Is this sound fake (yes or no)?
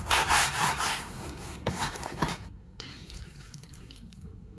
yes